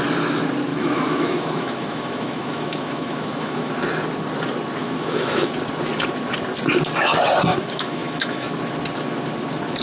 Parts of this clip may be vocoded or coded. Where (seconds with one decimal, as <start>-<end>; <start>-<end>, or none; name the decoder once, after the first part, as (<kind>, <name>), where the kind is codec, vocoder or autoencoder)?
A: 0.7-3.7 (autoencoder, DAC-VAE); 4.8-5.5; 7.5-8.5